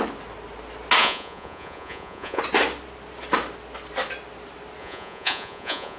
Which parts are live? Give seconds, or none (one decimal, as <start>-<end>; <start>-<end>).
0.0-1.0; 2.4-4.8